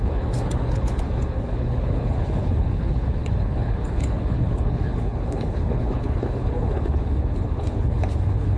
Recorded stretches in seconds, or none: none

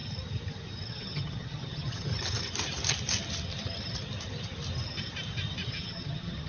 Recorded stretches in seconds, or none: 0.0-0.9; 2.1-5.7

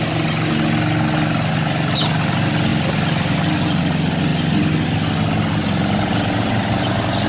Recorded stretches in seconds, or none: 0.0-7.3